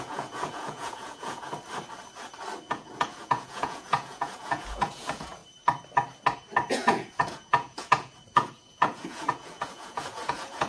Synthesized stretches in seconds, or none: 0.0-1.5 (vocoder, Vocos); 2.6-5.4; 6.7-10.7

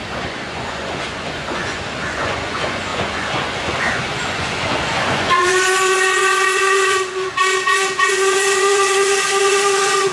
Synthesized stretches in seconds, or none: 0.0-10.1 (vocoder, Vocos)

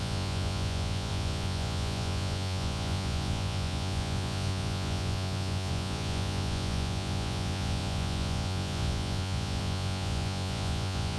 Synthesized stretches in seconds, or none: 0.0-11.2 (vocoder, Vocos)

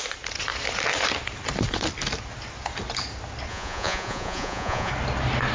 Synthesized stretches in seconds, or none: 3.5-4.9 (vocoder, Vocos)

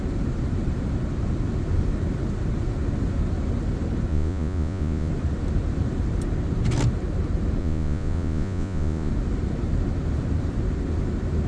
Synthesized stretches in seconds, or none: 4.1-5.1 (vocoder, Vocos); 7.6-9.1

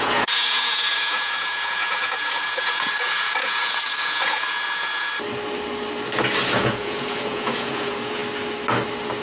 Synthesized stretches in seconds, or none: 0.0-5.1 (vocoder, Vocos); 6.4-8.2